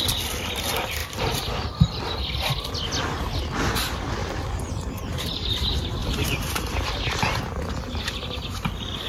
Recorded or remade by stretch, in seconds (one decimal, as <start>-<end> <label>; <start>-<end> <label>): 0.0-4.2 recorded; 4.2-4.7 remade; 4.7-6.0 recorded; 6.0-6.9 remade; 6.9-9.1 recorded